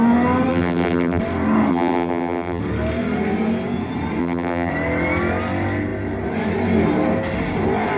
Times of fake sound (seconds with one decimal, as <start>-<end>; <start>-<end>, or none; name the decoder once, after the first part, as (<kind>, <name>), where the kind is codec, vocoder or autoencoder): 0.5-1.2 (vocoder, BigVGAN v2); 1.7-2.6; 4.2-4.7